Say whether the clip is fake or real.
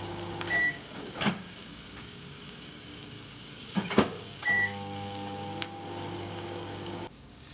fake